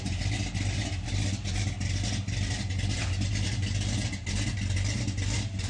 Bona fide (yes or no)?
yes